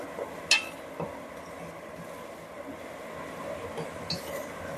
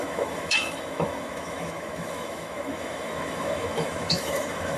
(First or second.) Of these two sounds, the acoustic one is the first